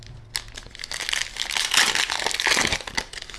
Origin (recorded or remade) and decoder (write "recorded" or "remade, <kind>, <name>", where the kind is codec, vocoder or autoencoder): recorded